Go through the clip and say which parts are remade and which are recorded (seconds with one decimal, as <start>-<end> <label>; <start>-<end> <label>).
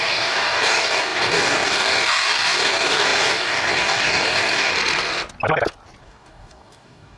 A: 0.0-4.7 remade; 4.7-6.0 recorded; 6.0-7.2 remade